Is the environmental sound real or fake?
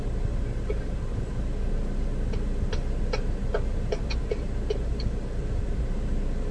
real